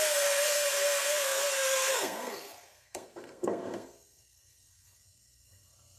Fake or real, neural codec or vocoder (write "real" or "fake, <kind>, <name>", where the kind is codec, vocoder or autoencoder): fake, codec, SNAC